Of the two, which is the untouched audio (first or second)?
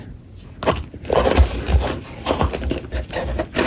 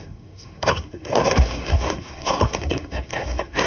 first